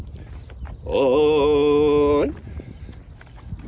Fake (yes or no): no